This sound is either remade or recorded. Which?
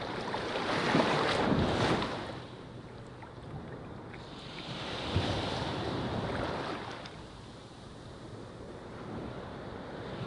remade